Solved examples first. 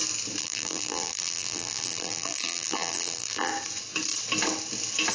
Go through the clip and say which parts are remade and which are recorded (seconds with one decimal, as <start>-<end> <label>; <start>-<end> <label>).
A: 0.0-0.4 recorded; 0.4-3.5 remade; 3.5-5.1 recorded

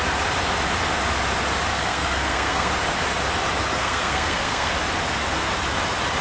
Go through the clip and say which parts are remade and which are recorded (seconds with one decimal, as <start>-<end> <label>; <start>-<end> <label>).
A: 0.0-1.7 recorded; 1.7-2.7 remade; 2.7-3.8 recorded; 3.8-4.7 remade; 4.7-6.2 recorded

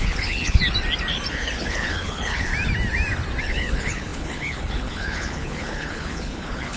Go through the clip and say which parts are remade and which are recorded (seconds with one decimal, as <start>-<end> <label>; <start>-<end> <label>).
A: 0.0-0.6 remade; 0.6-1.3 recorded; 1.3-2.5 remade; 2.5-3.4 recorded; 3.4-6.8 remade

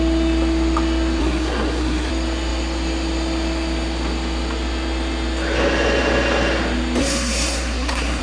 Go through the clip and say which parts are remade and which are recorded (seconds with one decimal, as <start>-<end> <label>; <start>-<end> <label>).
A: 0.0-1.2 recorded; 1.2-2.1 remade; 2.1-7.0 recorded; 7.0-8.2 remade